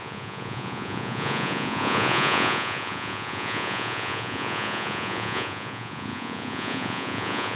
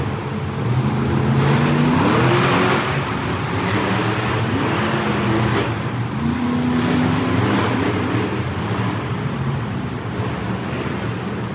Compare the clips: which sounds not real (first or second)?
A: first